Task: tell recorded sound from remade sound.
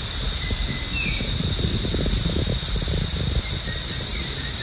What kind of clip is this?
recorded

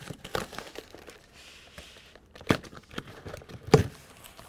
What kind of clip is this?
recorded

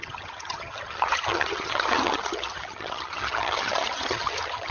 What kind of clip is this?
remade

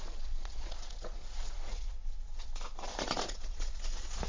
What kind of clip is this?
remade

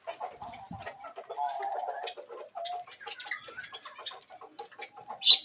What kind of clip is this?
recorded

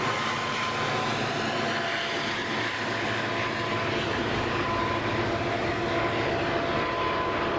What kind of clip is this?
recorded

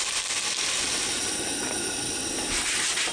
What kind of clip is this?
recorded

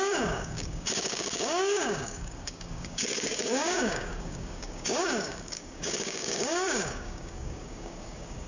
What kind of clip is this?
remade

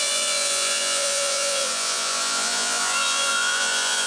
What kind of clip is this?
remade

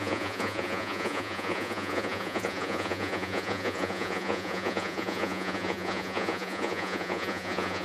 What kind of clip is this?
remade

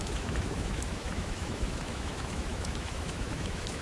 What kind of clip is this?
remade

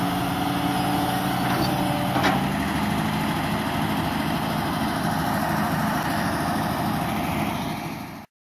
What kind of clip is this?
recorded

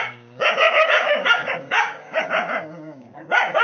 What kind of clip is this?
remade